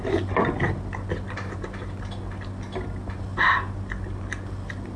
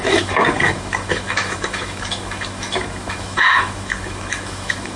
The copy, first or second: second